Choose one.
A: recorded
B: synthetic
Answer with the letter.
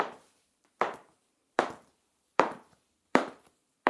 B